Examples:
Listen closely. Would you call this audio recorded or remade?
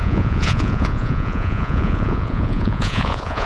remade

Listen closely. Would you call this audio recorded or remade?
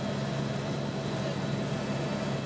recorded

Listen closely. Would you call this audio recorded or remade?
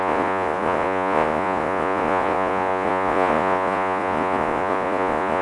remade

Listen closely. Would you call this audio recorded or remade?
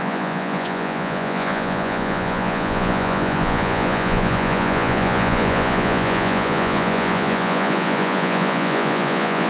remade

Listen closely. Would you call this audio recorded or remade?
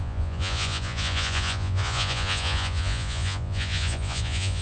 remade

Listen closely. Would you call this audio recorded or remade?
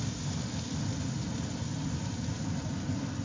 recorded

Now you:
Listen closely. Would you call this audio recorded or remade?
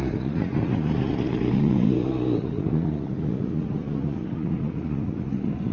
remade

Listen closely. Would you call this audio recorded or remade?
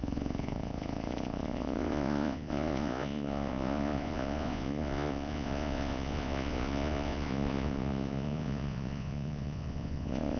remade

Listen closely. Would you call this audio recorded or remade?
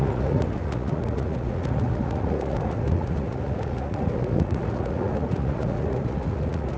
remade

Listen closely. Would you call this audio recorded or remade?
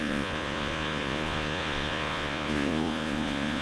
remade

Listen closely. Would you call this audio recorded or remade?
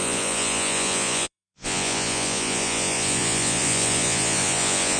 remade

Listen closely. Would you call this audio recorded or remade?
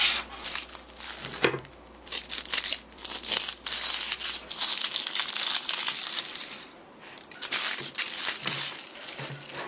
recorded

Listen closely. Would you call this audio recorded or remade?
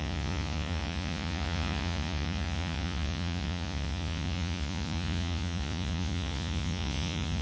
remade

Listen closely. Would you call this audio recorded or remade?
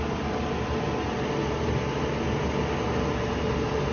recorded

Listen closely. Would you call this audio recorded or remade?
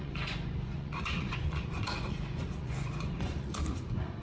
remade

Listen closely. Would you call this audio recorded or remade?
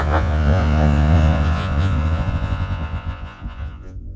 remade